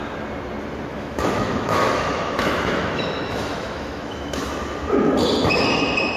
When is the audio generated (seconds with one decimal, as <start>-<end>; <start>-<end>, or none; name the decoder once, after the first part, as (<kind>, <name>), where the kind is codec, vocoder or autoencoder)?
0.9-4.5 (autoencoder, DAC-VAE)